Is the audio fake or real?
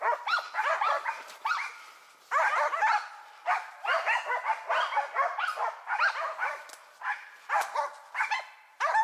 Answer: real